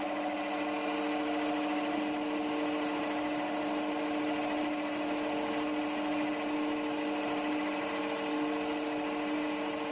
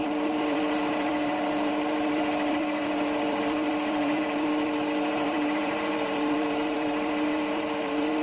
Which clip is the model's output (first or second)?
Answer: second